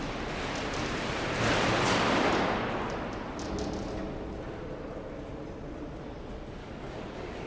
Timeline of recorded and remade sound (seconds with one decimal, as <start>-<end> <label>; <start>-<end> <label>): 0.0-6.6 recorded; 6.6-7.5 remade